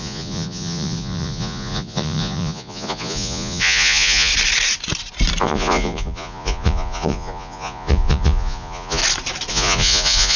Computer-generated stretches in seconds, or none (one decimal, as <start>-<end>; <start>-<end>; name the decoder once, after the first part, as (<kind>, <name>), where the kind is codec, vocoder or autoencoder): 0.0-4.3 (vocoder, Vocos); 5.4-9.0; 9.5-10.4